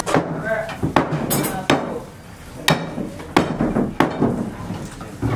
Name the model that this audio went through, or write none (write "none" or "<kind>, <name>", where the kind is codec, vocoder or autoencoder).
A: none